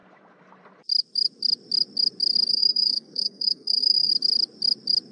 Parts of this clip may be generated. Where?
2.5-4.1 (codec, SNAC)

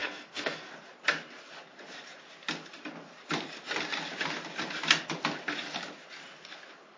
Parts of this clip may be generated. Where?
0.0-0.7 (codec, SNAC)

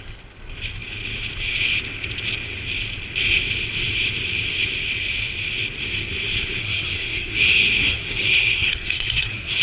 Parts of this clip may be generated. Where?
6.6-9.6 (codec, SNAC)

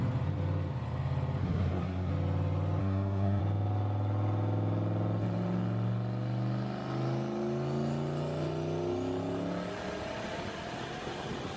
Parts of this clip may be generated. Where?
1.4-2.1 (codec, SNAC); 2.8-3.4